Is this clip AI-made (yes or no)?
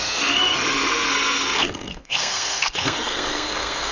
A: yes